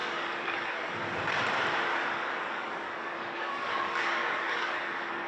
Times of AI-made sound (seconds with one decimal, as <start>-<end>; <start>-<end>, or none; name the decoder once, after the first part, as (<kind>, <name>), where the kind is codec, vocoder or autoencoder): 0.0-1.2 (codec, DAC); 1.9-5.3